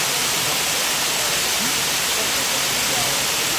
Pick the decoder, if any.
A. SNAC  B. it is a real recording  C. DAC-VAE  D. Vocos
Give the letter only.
B